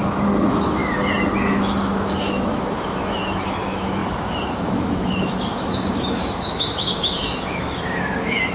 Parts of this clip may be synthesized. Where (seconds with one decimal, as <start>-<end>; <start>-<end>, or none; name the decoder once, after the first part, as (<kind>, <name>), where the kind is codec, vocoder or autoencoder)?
0.0-0.8 (autoencoder, DAC-VAE); 1.5-8.5